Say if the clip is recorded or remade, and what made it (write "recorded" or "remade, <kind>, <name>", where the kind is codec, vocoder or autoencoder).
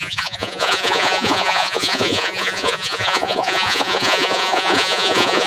remade, vocoder, Vocos